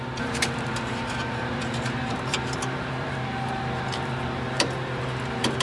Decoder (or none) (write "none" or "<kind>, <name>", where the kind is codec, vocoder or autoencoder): vocoder, BigVGAN v2